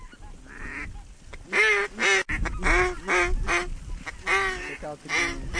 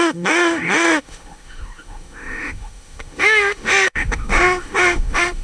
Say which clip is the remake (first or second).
second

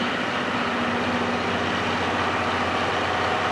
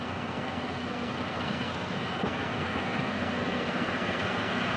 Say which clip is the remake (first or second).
second